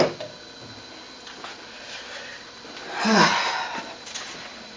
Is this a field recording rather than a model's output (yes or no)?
yes